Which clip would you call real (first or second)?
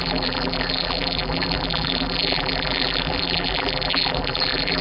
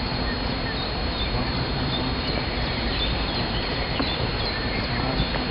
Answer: second